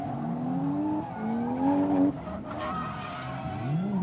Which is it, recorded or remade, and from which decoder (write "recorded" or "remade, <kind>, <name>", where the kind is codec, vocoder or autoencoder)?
recorded